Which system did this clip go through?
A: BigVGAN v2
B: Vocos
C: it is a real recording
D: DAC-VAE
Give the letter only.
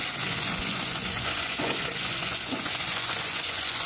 B